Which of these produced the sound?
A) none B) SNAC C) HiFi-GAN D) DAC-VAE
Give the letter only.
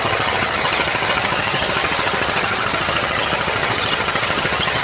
C